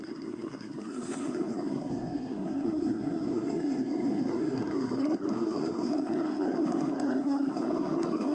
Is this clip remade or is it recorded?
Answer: remade